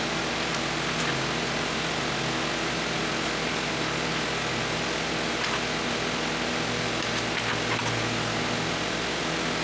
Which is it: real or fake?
real